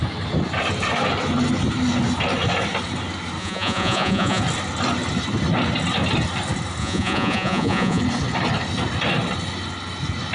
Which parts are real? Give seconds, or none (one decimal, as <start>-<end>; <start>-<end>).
0.0-3.4; 4.4-6.8; 8.0-10.3